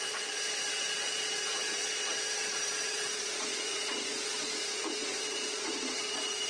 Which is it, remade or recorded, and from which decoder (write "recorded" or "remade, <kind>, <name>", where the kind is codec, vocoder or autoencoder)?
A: remade, vocoder, Vocos